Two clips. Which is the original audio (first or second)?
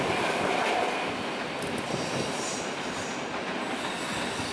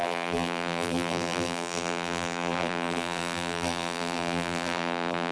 first